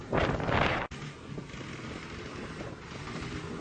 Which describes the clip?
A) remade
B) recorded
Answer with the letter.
B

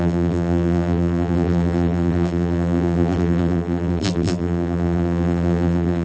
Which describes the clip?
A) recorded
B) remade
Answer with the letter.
B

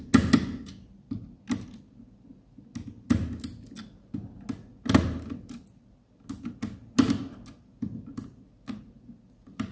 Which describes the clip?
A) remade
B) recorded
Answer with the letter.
B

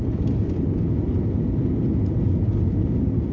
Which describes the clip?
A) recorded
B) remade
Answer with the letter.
A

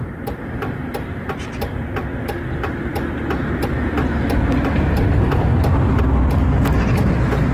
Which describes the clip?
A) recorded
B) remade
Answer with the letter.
A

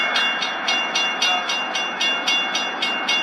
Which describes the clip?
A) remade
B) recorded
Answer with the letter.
B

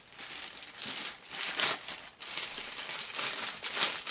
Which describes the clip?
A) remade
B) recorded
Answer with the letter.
B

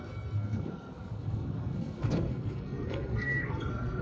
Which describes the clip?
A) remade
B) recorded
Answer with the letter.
A